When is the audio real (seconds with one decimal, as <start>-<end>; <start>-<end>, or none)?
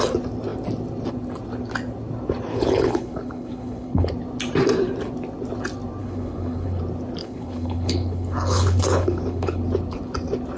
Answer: 0.0-2.5; 4.1-6.0; 6.8-7.2; 9.6-10.6